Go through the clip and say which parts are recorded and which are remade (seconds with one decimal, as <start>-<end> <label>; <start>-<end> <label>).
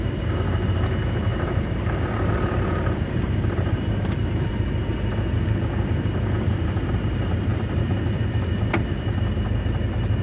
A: 0.0-1.3 recorded; 1.3-4.5 remade; 4.5-10.2 recorded